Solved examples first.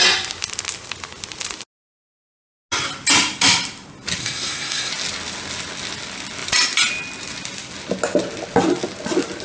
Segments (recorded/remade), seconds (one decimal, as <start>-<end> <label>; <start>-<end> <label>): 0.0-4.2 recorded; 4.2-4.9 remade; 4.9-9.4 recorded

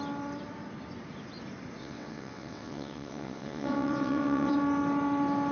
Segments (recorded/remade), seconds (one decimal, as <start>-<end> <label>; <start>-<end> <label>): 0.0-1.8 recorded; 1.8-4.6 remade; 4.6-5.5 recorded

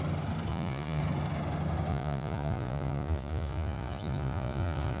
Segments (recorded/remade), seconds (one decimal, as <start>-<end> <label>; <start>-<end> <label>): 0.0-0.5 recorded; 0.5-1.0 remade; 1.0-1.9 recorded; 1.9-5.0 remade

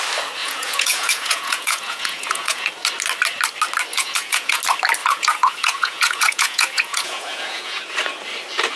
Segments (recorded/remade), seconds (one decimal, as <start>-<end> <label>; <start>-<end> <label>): 0.0-0.4 recorded; 0.4-2.7 remade; 2.7-3.9 recorded; 3.9-4.6 remade; 4.6-5.0 recorded; 5.0-7.8 remade; 7.8-8.8 recorded